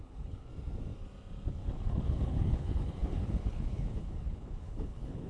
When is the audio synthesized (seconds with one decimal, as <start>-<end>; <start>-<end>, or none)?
0.0-0.5; 1.5-5.3